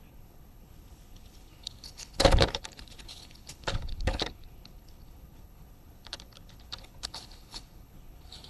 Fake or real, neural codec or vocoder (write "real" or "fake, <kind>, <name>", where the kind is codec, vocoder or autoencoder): fake, codec, HILCodec